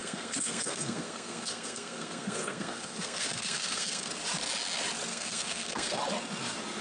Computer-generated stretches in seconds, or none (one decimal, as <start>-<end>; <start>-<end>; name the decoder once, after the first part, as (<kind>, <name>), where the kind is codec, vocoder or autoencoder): 0.0-4.1 (codec, SNAC); 5.1-6.0